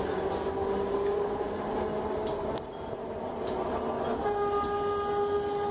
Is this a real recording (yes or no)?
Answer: yes